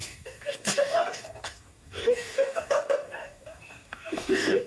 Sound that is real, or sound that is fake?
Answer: fake